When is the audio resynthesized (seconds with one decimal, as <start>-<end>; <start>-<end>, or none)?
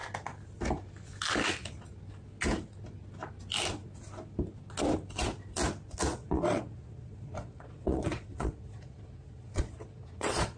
6.1-10.6